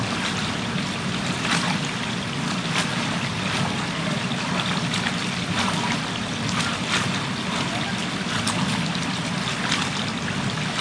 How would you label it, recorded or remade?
recorded